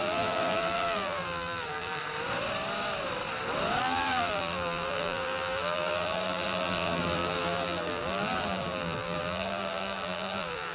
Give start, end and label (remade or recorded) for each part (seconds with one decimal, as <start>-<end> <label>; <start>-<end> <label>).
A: 0.0-2.0 remade; 2.0-3.8 recorded; 3.8-10.7 remade